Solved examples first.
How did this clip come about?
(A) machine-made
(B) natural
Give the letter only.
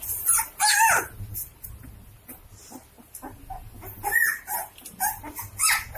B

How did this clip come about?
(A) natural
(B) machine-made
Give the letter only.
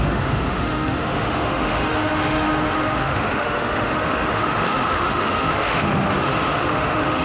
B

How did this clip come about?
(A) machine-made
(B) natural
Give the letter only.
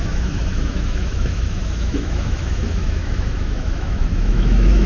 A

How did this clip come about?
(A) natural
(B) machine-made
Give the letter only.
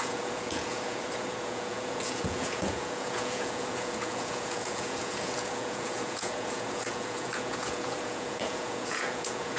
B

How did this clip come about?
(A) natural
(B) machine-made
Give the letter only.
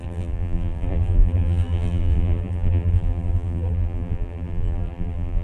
B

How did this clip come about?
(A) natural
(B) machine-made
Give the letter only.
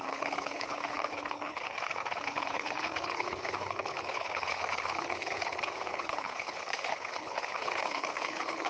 B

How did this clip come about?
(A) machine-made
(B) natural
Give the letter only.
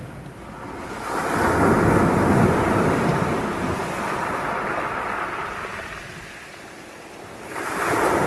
B